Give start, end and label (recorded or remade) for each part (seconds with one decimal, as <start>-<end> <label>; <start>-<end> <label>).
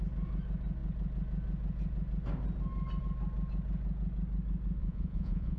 0.0-4.8 recorded; 4.8-5.6 remade